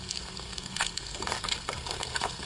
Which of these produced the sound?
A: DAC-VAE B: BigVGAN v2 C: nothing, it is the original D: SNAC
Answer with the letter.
D